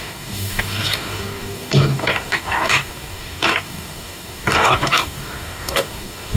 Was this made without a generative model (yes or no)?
no